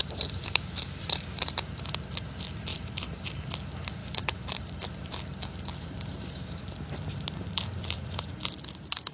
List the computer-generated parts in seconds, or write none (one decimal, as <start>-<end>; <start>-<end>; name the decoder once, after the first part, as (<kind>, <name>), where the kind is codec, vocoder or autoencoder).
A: 0.0-1.5 (vocoder, BigVGAN v2); 2.7-3.5; 4.0-8.6